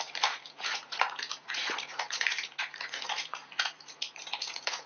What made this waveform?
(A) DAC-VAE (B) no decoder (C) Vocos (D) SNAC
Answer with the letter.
C